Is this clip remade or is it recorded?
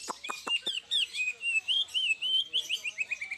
recorded